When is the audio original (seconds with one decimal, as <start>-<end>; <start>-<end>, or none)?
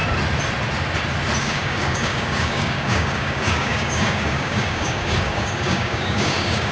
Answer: 0.0-1.4